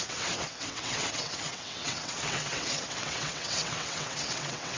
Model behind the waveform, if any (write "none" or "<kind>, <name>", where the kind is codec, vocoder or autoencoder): vocoder, WaveNeXt